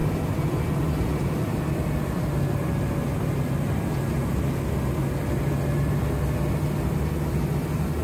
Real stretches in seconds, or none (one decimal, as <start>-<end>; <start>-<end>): 0.7-1.1; 1.8-8.0